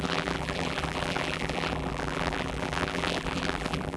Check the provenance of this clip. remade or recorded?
remade